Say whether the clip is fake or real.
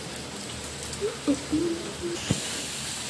real